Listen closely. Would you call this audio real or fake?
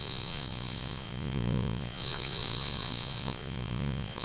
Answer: fake